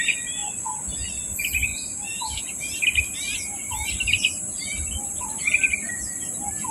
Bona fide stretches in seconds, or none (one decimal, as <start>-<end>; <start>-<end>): 0.4-1.1; 1.7-2.4